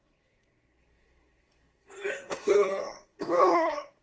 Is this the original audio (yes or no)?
no